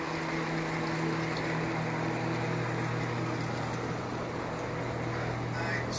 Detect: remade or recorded recorded